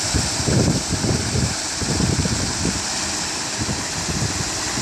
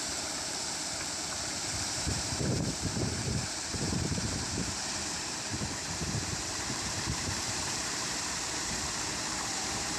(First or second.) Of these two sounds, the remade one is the second